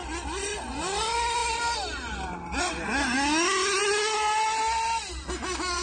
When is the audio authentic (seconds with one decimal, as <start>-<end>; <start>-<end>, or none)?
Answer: 0.0-5.8